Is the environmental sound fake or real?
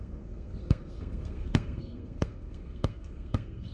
fake